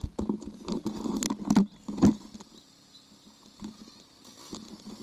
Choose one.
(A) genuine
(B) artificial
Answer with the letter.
A